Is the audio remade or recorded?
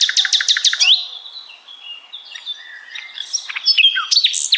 recorded